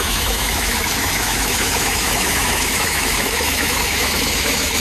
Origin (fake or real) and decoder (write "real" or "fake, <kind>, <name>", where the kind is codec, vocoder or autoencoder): fake, autoencoder, DAC-VAE